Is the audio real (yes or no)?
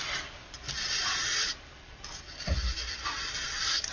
yes